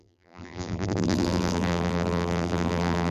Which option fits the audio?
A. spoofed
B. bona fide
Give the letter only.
A